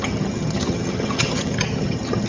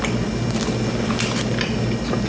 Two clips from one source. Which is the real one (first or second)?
second